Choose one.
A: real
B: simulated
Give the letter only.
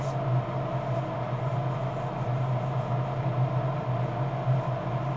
A